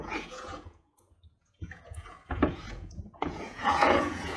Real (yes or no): no